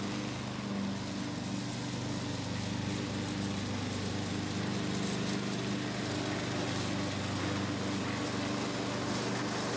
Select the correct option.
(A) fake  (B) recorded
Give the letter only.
B